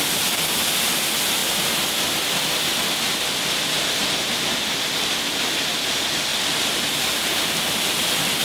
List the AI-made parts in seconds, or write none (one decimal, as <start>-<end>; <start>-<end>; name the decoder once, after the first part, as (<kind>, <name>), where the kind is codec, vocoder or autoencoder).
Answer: none